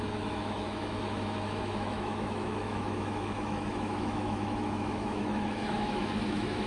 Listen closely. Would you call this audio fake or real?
fake